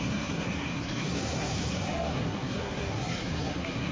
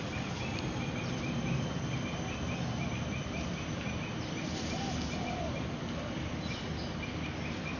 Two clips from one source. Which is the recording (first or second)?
second